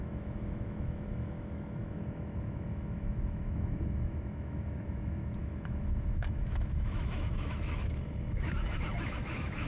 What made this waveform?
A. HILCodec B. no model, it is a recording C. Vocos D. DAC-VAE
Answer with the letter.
D